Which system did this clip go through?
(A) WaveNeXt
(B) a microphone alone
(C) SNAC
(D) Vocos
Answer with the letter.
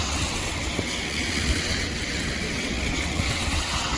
A